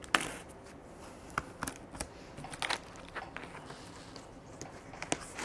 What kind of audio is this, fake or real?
real